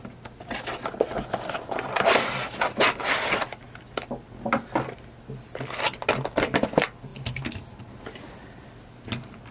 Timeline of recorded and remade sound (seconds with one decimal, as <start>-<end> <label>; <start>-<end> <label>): 0.0-9.5 recorded